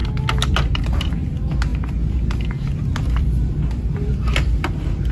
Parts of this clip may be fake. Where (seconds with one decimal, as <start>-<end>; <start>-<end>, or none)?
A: none